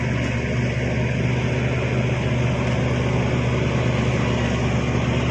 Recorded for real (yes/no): yes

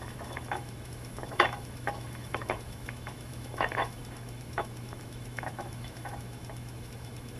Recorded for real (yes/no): no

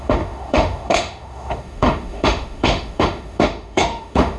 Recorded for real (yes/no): no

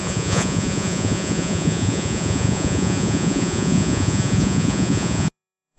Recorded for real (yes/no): no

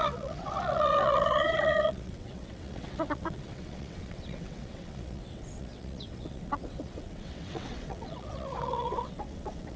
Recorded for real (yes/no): no